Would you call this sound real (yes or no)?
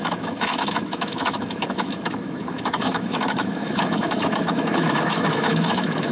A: no